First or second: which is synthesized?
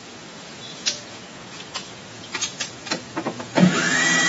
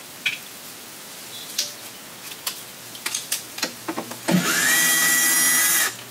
first